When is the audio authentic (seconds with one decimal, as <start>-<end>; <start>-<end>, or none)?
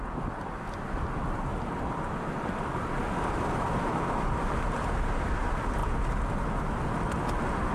0.0-1.5; 5.3-5.8; 7.2-7.7